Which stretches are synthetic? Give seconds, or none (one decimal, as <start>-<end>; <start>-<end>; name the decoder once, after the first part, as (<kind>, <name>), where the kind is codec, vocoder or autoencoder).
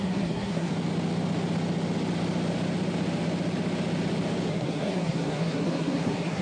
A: 0.0-0.7 (codec, SNAC); 4.5-6.4